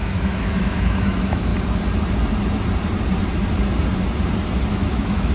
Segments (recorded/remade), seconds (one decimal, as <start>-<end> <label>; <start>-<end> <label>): 0.0-1.5 remade; 1.5-4.7 recorded; 4.7-5.3 remade